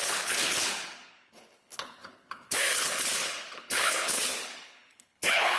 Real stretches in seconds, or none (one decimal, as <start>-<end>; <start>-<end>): none